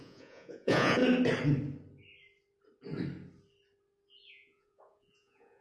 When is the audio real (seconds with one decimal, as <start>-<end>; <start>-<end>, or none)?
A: 1.0-4.3

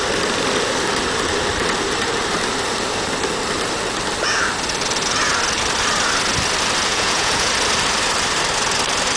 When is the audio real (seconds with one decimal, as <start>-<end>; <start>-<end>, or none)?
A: 0.0-6.9; 7.5-9.2

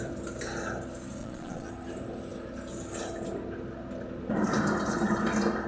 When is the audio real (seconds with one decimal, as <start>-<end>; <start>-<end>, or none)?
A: 0.0-1.2; 1.7-5.7

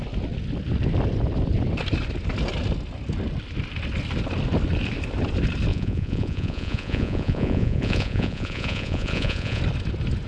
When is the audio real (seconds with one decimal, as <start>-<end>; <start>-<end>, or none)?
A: 0.0-5.7; 9.6-10.3

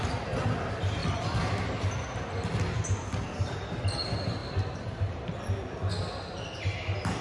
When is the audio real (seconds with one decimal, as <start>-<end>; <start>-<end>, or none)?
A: 0.0-7.2

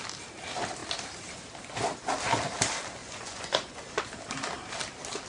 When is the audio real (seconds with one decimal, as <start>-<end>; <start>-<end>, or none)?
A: 0.0-3.0; 4.0-5.3

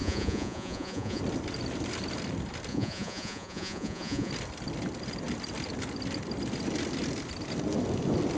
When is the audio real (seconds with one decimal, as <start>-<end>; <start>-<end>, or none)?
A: 1.2-2.7; 4.3-8.4

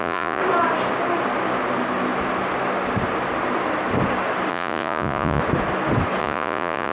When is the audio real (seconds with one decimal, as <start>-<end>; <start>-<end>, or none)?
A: 0.4-4.5; 5.4-6.2